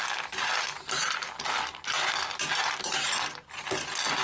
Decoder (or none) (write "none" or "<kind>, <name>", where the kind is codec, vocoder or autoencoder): none